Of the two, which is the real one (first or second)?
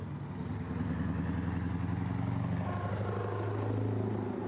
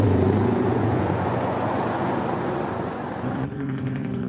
first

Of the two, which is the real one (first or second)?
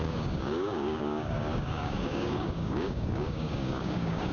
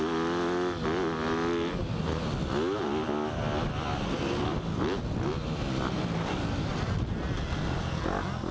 second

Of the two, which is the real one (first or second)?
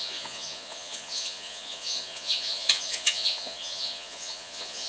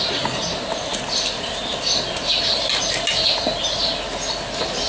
second